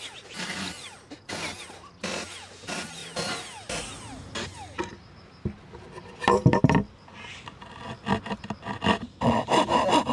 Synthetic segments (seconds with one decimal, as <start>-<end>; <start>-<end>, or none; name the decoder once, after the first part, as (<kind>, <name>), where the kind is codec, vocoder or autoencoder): none